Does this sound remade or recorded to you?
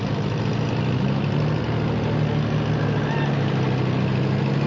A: recorded